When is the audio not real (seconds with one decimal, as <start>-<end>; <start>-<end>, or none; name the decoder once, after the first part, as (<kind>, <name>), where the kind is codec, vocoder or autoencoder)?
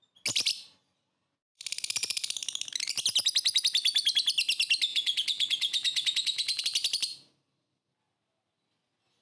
4.9-6.6 (vocoder, Vocos)